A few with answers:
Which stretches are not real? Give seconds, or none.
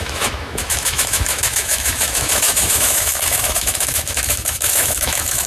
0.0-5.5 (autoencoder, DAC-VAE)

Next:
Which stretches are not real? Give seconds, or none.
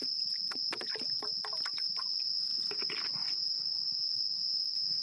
none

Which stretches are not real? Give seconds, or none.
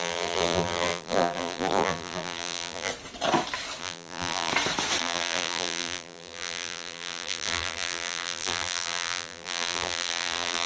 0.0-2.9 (vocoder, BigVGAN v2); 3.8-4.5; 5.0-10.7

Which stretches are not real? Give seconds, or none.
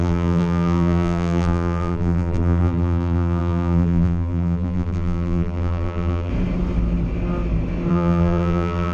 0.0-6.3 (vocoder, BigVGAN v2); 7.9-8.9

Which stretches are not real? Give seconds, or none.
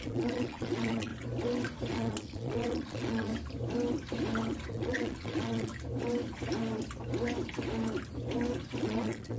0.0-1.1 (vocoder, Vocos); 1.9-3.3; 4.7-5.7; 8.8-9.4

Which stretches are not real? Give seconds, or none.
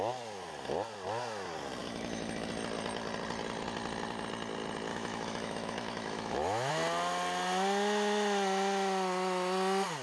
1.8-2.5 (autoencoder, DAC-VAE); 4.9-6.7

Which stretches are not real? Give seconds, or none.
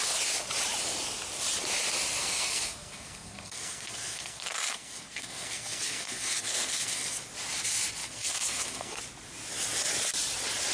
2.2-7.2 (codec, SNAC); 8.0-9.0